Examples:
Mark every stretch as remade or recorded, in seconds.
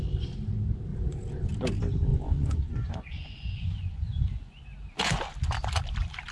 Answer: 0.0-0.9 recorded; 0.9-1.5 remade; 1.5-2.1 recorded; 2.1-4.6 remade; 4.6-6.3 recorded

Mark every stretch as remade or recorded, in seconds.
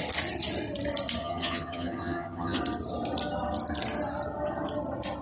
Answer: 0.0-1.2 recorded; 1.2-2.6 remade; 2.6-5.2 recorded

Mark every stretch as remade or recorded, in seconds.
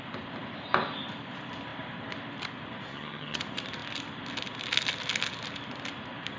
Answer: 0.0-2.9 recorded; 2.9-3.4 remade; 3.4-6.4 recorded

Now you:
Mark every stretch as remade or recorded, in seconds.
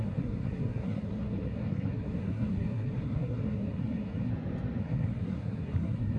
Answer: 0.0-4.3 remade; 4.3-4.8 recorded; 4.8-6.2 remade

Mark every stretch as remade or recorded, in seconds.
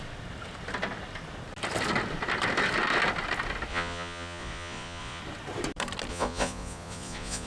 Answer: 0.0-3.7 recorded; 3.7-5.2 remade; 5.2-6.1 recorded; 6.1-7.5 remade